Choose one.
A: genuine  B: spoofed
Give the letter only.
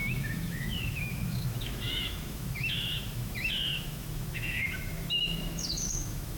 B